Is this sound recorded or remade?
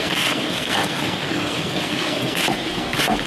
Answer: remade